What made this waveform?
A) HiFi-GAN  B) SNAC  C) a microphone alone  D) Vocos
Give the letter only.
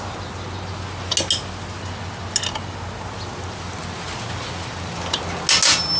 C